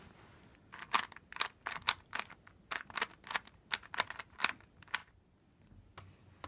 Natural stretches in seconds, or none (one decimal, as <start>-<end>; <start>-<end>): 0.0-6.5